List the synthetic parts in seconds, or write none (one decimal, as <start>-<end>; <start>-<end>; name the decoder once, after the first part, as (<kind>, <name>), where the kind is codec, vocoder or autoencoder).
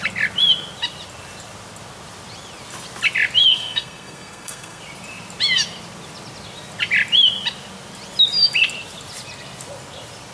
3.5-4.8 (codec, SNAC)